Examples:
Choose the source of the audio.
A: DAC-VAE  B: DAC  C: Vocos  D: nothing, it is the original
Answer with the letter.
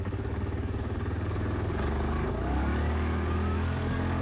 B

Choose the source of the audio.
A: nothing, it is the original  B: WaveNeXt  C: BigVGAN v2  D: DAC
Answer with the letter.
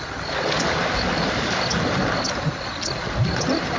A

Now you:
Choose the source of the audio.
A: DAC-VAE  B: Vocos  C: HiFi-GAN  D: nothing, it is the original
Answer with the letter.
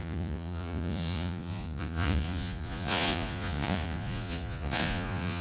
B